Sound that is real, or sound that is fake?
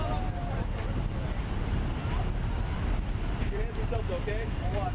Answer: real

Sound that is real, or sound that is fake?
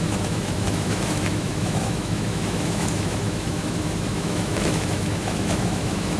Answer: fake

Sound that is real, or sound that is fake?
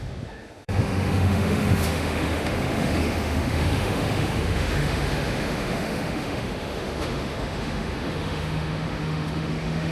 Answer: fake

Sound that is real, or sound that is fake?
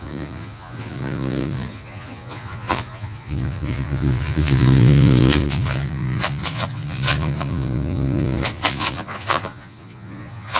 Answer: fake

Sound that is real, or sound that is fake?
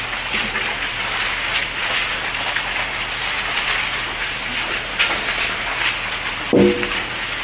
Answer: real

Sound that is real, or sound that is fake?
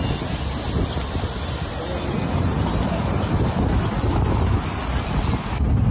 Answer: real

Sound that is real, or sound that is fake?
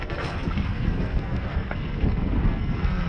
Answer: fake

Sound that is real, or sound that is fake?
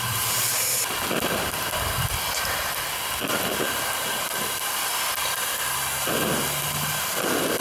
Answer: real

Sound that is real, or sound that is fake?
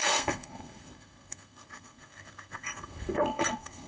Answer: fake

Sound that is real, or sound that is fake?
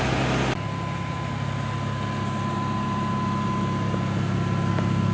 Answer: real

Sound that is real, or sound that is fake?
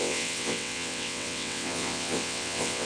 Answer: fake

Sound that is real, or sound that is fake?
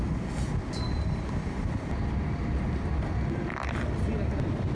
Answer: real